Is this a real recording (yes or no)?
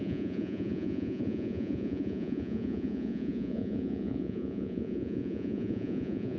no